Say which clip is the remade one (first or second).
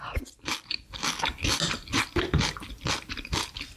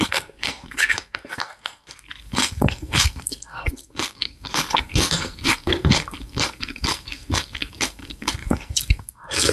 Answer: second